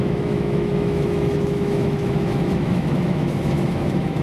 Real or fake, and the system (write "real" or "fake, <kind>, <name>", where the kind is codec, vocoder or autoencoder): fake, autoencoder, DAC-VAE